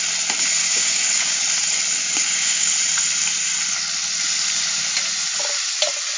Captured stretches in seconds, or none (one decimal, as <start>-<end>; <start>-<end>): 0.0-0.6; 1.4-2.0; 2.7-6.2